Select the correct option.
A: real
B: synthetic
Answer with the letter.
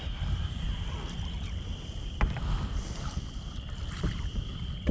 A